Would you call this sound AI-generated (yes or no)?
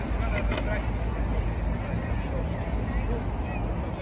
no